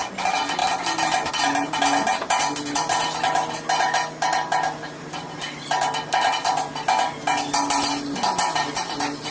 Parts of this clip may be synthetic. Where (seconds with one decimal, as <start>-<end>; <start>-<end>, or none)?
none